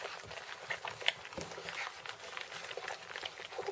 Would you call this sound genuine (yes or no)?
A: yes